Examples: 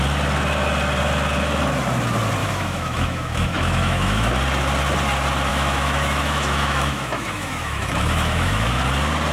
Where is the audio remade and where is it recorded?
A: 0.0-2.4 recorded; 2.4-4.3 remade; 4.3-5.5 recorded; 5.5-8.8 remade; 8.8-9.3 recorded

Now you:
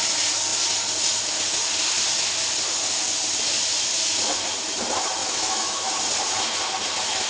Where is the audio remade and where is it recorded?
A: 0.0-5.2 recorded; 5.2-5.9 remade; 5.9-7.3 recorded

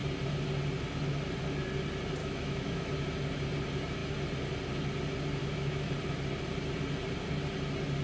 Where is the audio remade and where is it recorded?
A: 0.0-2.2 recorded; 2.2-2.9 remade; 2.9-5.4 recorded; 5.4-5.9 remade; 5.9-8.0 recorded

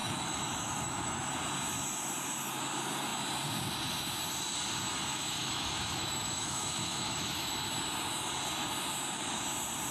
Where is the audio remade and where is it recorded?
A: 0.0-1.3 remade; 1.3-5.1 recorded; 5.1-7.5 remade; 7.5-9.9 recorded

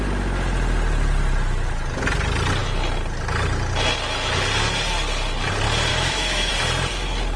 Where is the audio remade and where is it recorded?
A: 0.0-5.9 recorded; 5.9-6.5 remade; 6.5-7.4 recorded

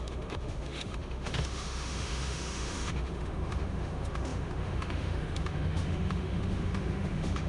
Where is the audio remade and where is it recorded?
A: 0.0-7.5 remade

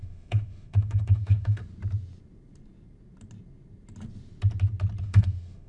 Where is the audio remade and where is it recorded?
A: 0.0-1.6 remade; 1.6-5.0 recorded; 5.0-5.7 remade